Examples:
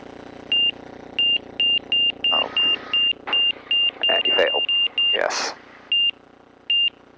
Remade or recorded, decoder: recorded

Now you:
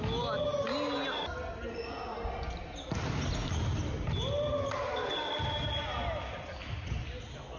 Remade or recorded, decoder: recorded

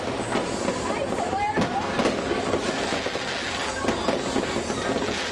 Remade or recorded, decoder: recorded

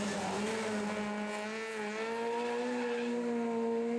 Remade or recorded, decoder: recorded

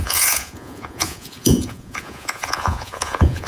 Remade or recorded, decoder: remade, vocoder, Vocos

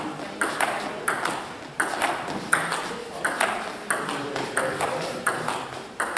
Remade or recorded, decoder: recorded